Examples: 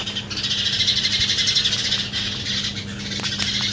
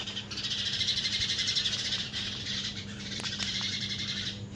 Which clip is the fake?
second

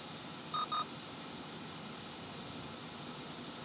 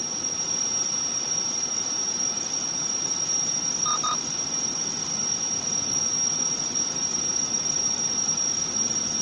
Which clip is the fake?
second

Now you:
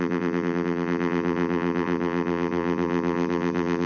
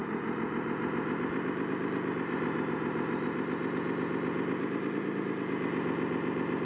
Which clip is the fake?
first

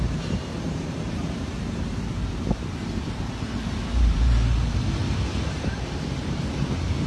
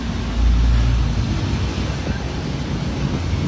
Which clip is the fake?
first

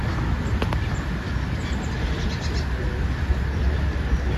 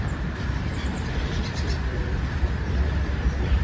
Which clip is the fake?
second